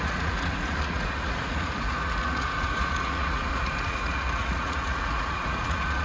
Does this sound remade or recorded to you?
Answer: remade